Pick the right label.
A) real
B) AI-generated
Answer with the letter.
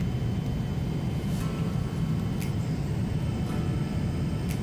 A